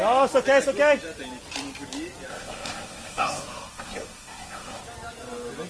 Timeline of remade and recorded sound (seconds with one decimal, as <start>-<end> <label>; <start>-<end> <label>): 0.0-2.3 recorded; 2.3-4.8 remade; 4.8-5.7 recorded

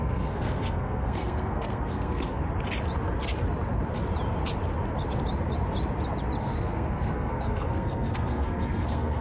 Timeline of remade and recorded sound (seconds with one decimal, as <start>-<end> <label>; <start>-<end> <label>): 0.0-2.4 remade; 2.4-6.4 recorded; 6.4-9.2 remade

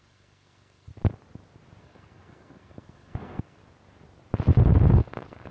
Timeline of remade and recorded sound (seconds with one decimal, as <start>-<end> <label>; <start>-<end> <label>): 0.0-0.9 remade; 0.9-1.8 recorded; 1.8-3.6 remade; 3.6-4.9 recorded; 4.9-5.5 remade

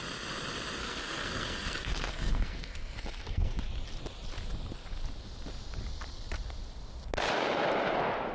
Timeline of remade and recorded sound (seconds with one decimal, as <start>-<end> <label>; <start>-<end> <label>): 0.0-0.8 recorded; 0.8-3.6 remade; 3.6-8.3 recorded

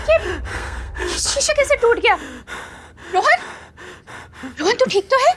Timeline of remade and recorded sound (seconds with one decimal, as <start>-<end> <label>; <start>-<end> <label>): 0.0-0.5 recorded; 0.5-1.5 remade; 1.5-5.4 recorded

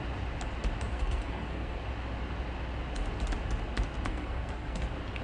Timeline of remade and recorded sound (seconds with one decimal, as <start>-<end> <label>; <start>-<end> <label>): 0.0-0.9 recorded; 0.9-1.8 remade; 1.8-4.1 recorded; 4.1-4.8 remade; 4.8-5.2 recorded

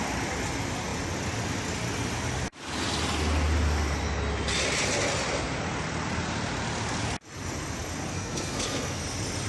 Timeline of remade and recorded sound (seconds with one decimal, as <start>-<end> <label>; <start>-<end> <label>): 0.0-8.1 recorded; 8.1-9.0 remade; 9.0-9.5 recorded

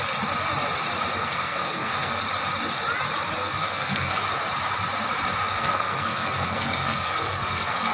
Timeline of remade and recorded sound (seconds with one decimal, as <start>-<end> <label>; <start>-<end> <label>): 0.0-1.2 recorded; 1.2-2.2 remade; 2.2-3.4 recorded; 3.4-4.2 remade; 4.2-5.5 recorded; 5.5-7.9 remade